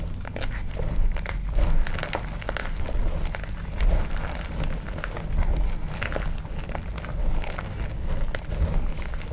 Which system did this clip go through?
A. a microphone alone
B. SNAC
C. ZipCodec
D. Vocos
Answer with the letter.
A